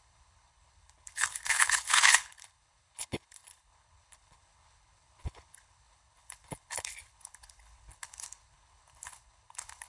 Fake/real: fake